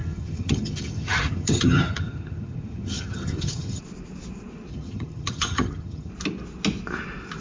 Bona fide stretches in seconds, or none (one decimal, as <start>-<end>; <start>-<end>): 3.8-4.7; 6.1-7.4

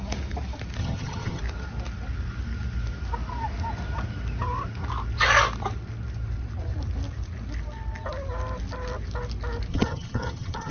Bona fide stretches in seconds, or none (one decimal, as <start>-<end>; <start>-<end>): 0.0-0.8; 1.4-9.7

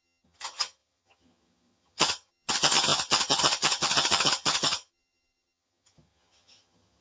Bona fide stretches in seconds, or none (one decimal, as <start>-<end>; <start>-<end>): none

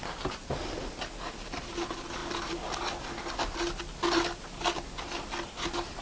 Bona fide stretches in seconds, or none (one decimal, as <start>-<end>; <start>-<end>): 0.0-6.0

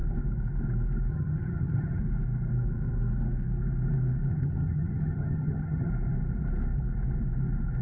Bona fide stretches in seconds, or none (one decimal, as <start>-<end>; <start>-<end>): 0.0-1.1; 2.0-4.3; 5.9-7.8

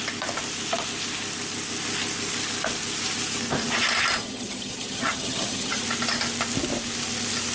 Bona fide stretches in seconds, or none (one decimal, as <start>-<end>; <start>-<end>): 0.0-4.2; 5.8-7.5

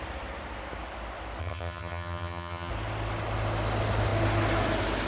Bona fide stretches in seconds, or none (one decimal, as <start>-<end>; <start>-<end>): 0.0-1.4; 2.7-5.1

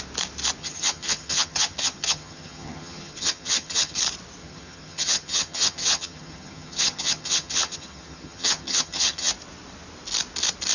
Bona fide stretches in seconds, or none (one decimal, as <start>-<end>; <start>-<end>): 0.0-0.6; 4.0-4.4; 9.3-10.7